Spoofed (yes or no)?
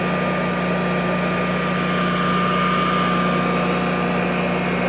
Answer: no